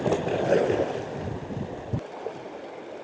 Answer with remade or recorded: recorded